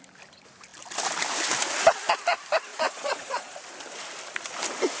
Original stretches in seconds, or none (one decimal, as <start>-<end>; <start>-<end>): 0.0-2.7; 3.6-5.0